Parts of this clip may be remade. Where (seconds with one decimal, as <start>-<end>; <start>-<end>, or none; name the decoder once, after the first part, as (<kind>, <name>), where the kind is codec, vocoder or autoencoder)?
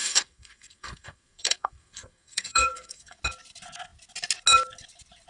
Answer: 0.0-3.2 (codec, SNAC)